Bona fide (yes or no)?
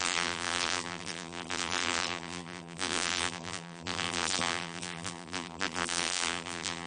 no